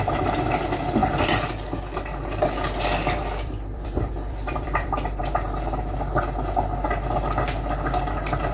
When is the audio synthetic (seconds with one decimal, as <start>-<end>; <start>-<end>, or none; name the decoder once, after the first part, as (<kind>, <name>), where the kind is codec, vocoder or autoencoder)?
3.2-5.2 (vocoder, BigVGAN v2)